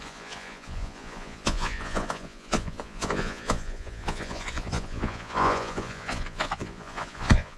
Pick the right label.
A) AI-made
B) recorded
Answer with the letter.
A